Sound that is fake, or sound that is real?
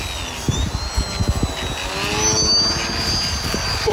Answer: real